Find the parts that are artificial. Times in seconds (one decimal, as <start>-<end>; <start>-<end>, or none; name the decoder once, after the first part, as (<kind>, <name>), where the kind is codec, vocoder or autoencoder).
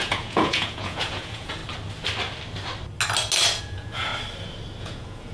0.0-1.6 (vocoder, Vocos); 3.6-4.1; 4.8-5.3